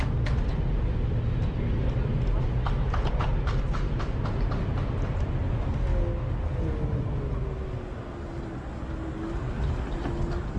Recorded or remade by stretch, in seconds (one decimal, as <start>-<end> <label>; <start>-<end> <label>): 0.0-10.6 recorded